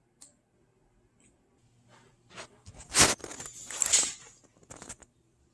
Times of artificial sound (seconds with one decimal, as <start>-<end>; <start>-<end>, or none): none